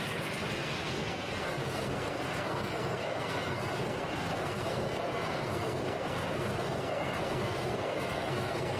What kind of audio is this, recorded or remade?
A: remade